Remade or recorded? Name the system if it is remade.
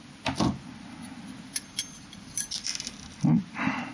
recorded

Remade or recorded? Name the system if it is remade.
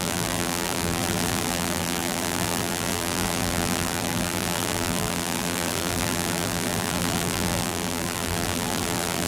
remade, vocoder, BigVGAN v2